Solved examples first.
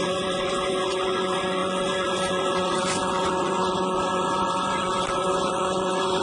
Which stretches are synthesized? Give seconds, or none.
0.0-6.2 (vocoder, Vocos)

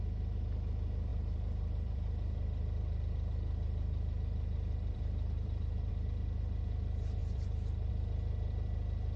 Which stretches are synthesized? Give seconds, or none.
1.1-5.9 (vocoder, BigVGAN v2); 7.2-7.9

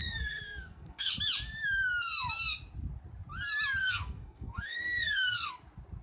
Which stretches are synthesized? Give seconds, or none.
0.0-1.1 (codec, SNAC); 3.8-5.5

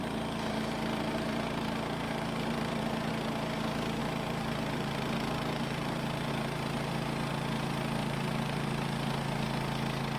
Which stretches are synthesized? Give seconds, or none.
0.0-3.1 (vocoder, BigVGAN v2); 4.0-6.3; 8.0-8.7

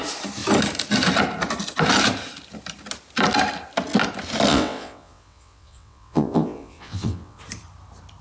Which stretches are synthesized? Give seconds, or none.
4.5-7.4 (vocoder, WaveNeXt)